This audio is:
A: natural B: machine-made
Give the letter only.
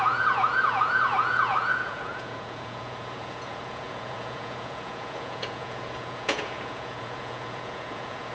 B